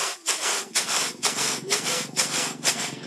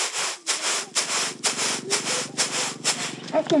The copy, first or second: first